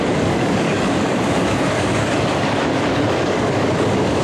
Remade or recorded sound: remade